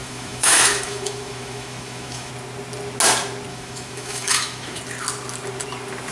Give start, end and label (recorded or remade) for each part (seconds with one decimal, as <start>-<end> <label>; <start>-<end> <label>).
0.0-2.3 remade; 2.3-3.5 recorded; 3.5-4.8 remade; 4.8-6.1 recorded